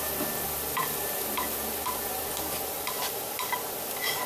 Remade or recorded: remade